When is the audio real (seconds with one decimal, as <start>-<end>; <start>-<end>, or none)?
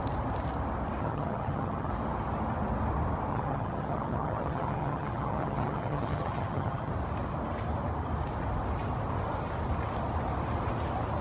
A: 0.0-1.0; 1.9-3.3; 6.9-11.2